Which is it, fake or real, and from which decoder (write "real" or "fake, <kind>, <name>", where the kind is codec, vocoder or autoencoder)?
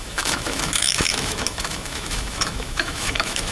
fake, autoencoder, DAC-VAE